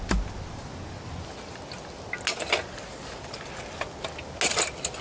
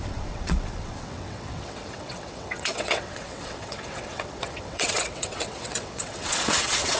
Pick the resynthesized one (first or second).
second